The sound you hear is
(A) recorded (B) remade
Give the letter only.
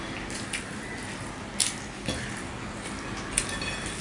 A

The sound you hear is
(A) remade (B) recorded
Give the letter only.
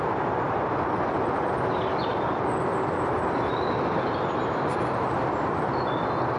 B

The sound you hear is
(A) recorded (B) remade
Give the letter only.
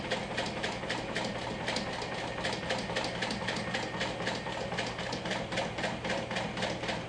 A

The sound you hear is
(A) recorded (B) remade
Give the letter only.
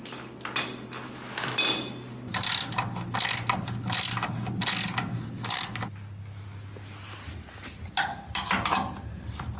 A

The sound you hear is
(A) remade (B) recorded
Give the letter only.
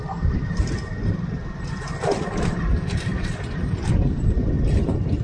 A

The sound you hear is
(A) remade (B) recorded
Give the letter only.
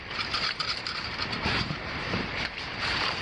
A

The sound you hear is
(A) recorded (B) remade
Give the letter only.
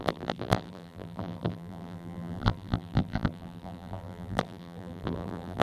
B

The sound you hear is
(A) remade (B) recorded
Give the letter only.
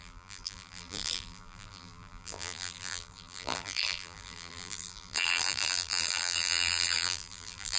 A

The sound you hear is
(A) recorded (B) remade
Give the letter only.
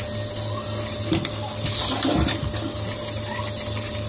A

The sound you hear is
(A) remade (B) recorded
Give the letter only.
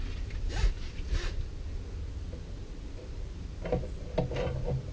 B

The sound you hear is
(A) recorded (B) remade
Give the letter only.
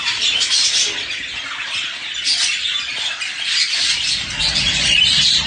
A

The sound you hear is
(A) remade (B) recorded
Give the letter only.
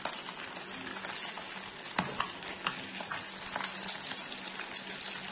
B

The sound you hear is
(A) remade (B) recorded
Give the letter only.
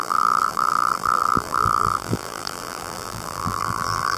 A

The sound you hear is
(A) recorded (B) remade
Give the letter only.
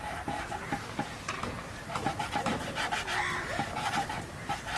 B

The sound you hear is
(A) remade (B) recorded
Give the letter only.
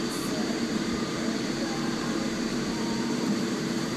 A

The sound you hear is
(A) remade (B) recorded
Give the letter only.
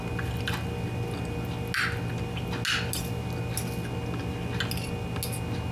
B